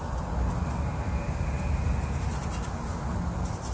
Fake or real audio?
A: real